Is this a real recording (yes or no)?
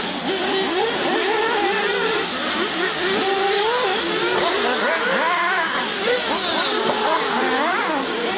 yes